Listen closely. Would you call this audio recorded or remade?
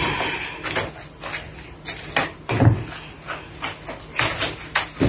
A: recorded